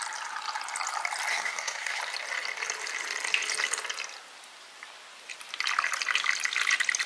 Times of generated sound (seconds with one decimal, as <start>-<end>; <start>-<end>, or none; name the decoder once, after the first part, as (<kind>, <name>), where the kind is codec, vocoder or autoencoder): 1.3-2.0 (codec, SNAC)